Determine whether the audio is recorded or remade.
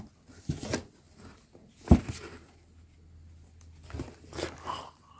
recorded